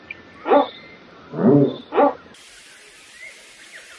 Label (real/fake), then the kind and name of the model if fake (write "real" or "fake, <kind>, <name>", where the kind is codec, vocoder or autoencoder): real